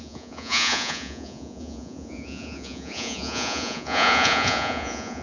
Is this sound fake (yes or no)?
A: yes